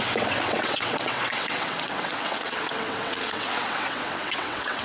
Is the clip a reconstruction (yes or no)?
yes